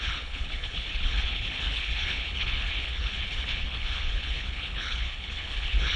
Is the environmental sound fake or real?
fake